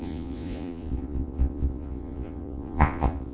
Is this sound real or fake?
fake